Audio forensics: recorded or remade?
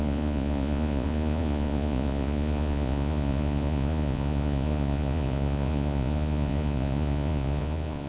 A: remade